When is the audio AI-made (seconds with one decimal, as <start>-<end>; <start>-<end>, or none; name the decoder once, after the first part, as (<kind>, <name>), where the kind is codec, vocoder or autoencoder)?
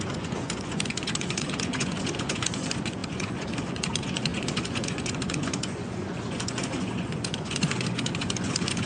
0.0-8.9 (vocoder, Vocos)